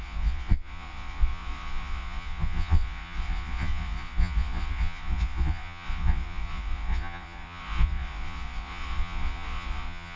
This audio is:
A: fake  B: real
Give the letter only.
A